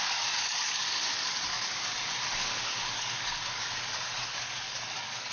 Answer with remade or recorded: remade